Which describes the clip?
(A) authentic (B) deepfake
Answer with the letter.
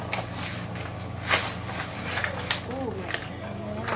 A